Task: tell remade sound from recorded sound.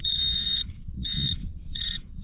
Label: remade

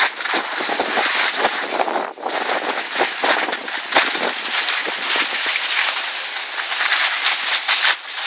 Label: recorded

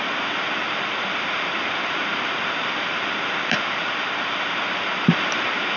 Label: remade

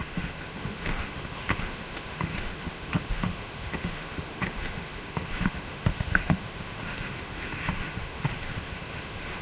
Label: remade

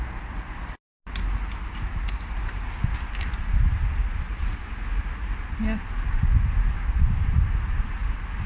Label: recorded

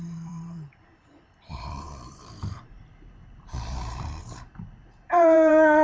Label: remade